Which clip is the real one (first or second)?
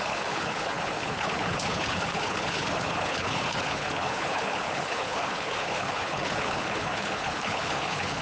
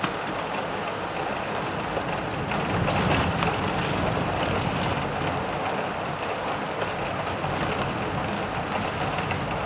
second